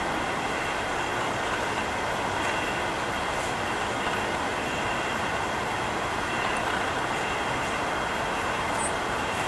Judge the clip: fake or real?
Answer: real